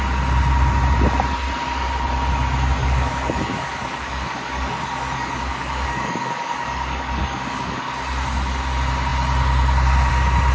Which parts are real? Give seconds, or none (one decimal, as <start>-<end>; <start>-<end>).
0.0-2.8; 7.9-10.5